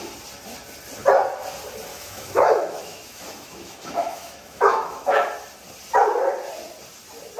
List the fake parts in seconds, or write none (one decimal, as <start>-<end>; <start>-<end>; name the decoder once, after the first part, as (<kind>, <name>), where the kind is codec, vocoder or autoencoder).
1.9-5.3 (autoencoder, DAC-VAE)

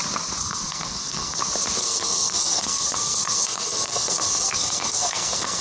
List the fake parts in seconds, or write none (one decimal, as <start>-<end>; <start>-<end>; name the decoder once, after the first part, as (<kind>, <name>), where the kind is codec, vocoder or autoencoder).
0.4-1.4 (codec, SNAC); 1.8-5.6

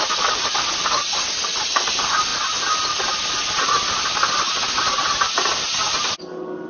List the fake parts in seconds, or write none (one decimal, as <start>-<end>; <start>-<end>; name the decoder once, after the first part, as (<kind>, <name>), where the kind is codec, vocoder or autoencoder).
none

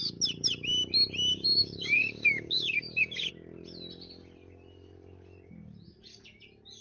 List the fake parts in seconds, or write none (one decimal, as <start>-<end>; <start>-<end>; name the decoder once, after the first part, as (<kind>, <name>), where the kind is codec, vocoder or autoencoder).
1.3-3.3 (codec, DAC)

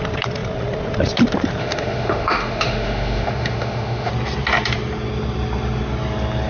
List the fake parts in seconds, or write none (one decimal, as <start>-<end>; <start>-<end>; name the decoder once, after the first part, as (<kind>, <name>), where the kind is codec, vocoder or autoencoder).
1.6-4.1 (autoencoder, DAC-VAE)